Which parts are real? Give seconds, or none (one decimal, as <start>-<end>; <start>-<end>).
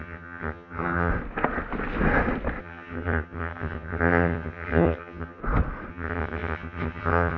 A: 1.1-2.6; 5.4-5.9